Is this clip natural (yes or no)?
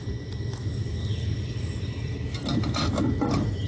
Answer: yes